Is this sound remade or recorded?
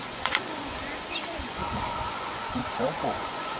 remade